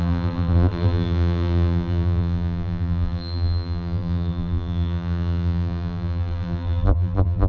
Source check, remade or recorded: remade